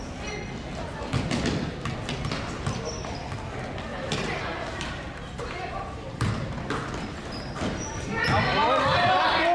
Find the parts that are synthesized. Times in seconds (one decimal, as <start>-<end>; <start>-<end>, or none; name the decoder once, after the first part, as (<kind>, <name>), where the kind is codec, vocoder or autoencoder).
3.9-6.3 (vocoder, BigVGAN v2)